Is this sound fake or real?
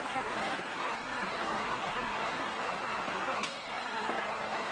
fake